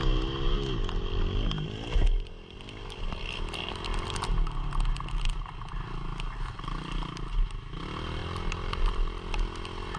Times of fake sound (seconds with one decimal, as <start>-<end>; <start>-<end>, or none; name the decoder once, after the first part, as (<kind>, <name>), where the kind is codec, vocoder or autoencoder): 8.2-10.0 (vocoder, BigVGAN v2)